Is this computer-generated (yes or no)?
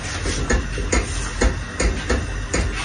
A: no